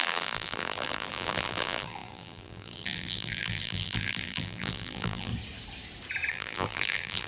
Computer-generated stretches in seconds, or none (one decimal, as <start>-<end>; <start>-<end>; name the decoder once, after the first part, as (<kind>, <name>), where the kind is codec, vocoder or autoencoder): 0.0-5.3 (vocoder, BigVGAN v2); 6.3-7.3